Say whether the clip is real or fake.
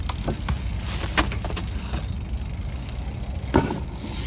real